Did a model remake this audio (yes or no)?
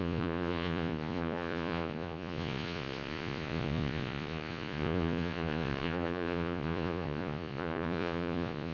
yes